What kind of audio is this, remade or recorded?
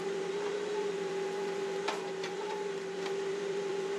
remade